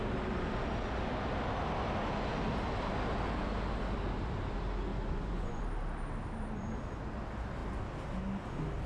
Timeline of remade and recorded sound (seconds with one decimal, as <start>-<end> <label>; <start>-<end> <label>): 0.0-4.9 recorded; 4.9-5.6 remade; 5.6-8.9 recorded